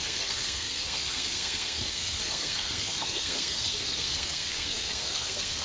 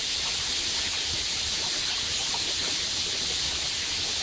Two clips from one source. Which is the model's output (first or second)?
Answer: first